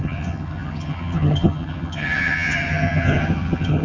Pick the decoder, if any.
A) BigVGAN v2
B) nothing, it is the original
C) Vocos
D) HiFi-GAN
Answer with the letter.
D